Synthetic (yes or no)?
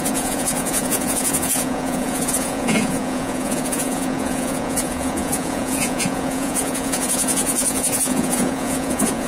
yes